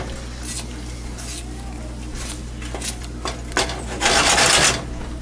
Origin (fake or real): real